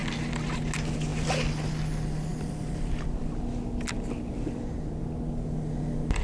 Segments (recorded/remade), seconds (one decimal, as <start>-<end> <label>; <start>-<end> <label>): 0.0-6.2 recorded